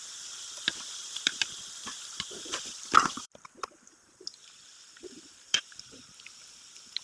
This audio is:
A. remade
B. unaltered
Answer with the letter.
A